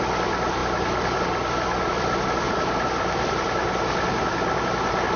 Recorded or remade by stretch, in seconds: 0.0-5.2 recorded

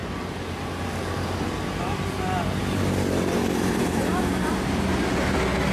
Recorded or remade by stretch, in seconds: 0.0-2.6 recorded; 2.6-4.1 remade; 4.1-5.7 recorded

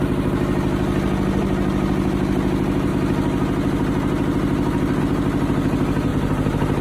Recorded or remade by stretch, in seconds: 0.0-6.1 recorded; 6.1-6.8 remade

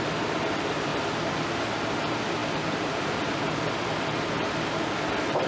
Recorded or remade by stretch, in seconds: 0.0-0.9 remade; 0.9-1.9 recorded; 1.9-5.5 remade

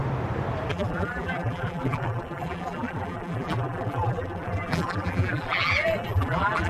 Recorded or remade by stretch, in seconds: 0.0-0.7 recorded; 0.7-6.7 remade

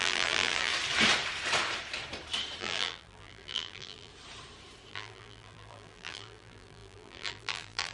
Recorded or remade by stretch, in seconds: 0.0-0.7 remade; 0.7-2.6 recorded; 2.6-4.1 remade; 4.1-4.9 recorded; 4.9-7.9 remade

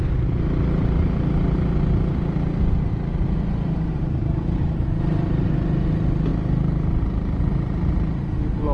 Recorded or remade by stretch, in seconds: 0.0-6.3 recorded; 6.3-8.2 remade; 8.2-8.7 recorded